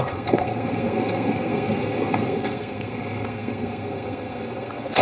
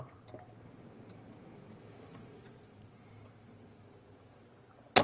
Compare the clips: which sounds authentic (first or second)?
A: second